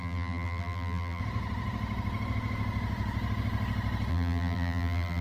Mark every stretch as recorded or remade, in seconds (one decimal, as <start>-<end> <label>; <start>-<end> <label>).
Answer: 0.0-1.2 remade; 1.2-4.1 recorded; 4.1-5.2 remade